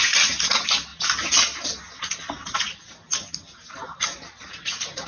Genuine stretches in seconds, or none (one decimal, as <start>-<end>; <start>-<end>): 0.0-5.1